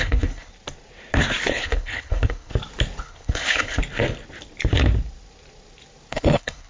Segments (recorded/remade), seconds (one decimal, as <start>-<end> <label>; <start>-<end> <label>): 0.0-0.5 remade; 0.5-1.5 recorded; 1.5-2.5 remade; 2.5-3.0 recorded; 3.0-3.8 remade; 3.8-6.1 recorded; 6.1-6.7 remade